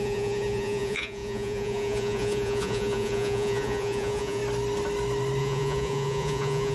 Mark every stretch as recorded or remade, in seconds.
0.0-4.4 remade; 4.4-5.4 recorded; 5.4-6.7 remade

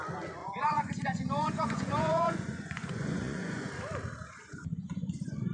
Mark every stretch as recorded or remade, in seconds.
0.0-0.4 recorded; 0.4-3.7 remade; 3.7-4.2 recorded; 4.2-5.5 remade

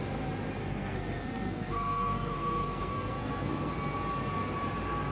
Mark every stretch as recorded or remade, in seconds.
0.0-0.6 recorded; 0.6-3.7 remade; 3.7-5.1 recorded